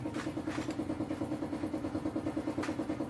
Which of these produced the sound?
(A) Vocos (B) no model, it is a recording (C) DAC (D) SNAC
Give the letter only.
B